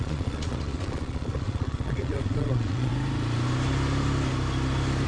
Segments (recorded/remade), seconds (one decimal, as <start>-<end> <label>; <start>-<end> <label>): 0.0-2.9 remade; 2.9-5.1 recorded